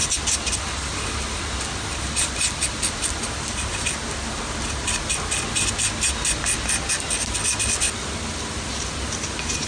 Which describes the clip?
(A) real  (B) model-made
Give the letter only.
A